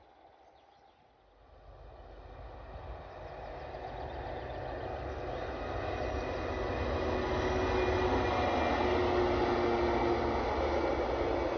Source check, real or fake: real